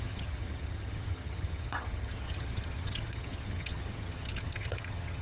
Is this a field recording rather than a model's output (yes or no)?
no